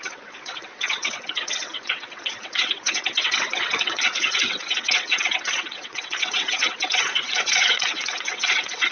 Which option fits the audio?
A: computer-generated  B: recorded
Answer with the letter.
A